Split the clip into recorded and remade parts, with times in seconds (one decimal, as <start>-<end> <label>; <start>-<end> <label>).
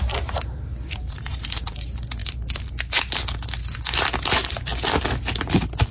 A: 0.0-2.2 remade; 2.2-4.3 recorded; 4.3-4.7 remade; 4.7-5.4 recorded; 5.4-5.9 remade